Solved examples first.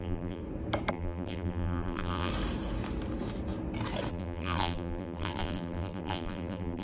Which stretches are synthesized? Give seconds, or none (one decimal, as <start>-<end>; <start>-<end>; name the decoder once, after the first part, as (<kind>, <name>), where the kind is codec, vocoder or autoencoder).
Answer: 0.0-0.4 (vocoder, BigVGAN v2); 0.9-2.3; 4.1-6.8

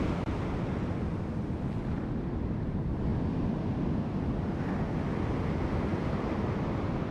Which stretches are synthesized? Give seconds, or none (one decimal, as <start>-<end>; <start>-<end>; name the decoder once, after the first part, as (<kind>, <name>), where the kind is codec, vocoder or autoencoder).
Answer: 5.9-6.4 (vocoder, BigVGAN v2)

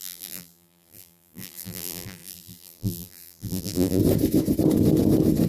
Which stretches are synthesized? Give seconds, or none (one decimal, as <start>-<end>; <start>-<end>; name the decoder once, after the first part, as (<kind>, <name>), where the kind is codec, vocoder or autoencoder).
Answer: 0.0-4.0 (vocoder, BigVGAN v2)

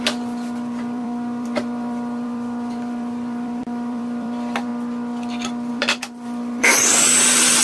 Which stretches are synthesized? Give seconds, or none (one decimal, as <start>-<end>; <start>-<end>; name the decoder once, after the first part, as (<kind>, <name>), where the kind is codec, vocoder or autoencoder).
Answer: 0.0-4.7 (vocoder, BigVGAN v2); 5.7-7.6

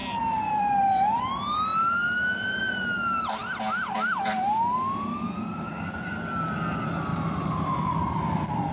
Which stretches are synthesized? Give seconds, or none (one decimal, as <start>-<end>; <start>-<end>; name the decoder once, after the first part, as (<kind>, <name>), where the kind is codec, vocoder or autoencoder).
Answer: 0.0-1.2 (vocoder, BigVGAN v2)